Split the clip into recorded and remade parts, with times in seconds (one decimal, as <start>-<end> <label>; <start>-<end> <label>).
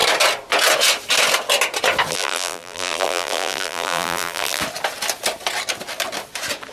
0.0-2.1 recorded; 2.1-4.6 remade; 4.6-6.7 recorded